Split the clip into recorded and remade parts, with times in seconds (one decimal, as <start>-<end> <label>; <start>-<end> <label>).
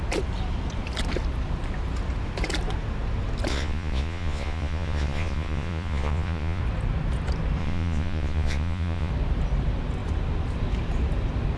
0.0-3.5 recorded; 3.5-6.6 remade; 6.6-7.6 recorded; 7.6-9.1 remade; 9.1-11.6 recorded